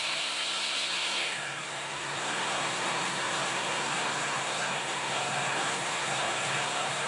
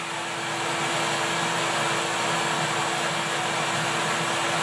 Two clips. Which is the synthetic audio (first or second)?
first